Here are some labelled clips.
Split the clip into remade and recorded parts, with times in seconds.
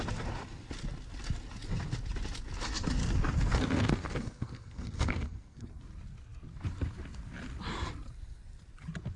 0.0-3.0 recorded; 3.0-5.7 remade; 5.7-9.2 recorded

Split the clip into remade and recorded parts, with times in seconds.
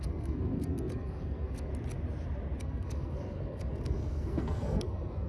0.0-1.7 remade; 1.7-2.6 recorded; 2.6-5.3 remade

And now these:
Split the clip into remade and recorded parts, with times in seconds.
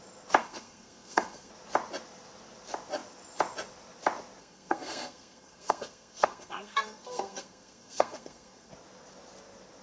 0.0-0.4 recorded; 0.4-1.5 remade; 1.5-4.4 recorded; 4.4-8.7 remade; 8.7-9.8 recorded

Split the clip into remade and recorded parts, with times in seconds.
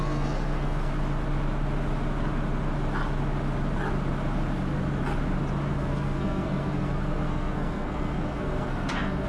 0.0-0.9 remade; 0.9-5.7 recorded; 5.7-9.3 remade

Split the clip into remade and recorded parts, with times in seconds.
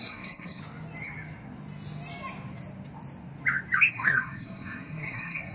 0.0-0.6 remade; 0.6-3.9 recorded; 3.9-5.5 remade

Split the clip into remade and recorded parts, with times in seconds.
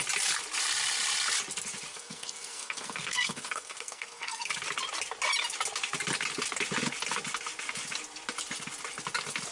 0.0-1.9 recorded; 1.9-4.5 remade; 4.5-9.5 recorded